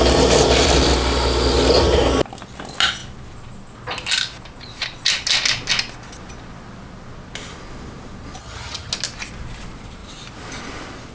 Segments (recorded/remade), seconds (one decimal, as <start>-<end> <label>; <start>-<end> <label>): 0.0-8.4 recorded; 8.4-8.9 remade; 8.9-11.1 recorded